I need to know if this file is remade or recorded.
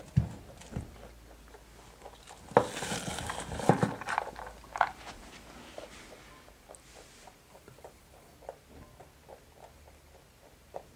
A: recorded